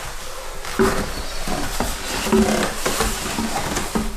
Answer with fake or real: real